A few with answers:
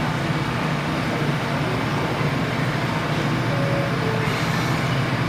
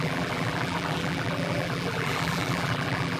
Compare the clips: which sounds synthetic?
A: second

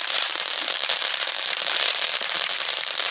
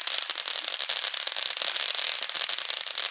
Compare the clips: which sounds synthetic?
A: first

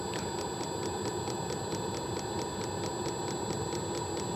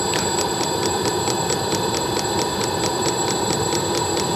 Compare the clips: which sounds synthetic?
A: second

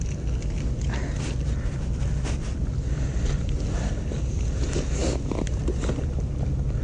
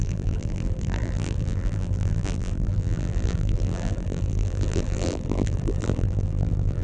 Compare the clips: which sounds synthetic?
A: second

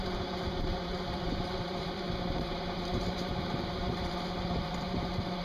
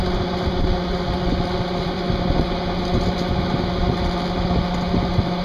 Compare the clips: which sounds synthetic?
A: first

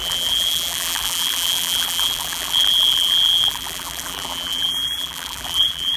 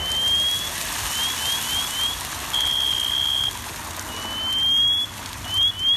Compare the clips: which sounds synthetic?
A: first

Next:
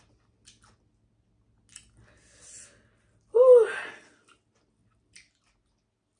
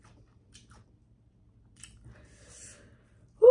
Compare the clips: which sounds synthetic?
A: second